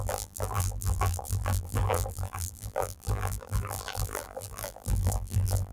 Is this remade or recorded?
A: remade